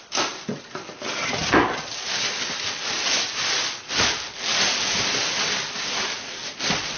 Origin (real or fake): real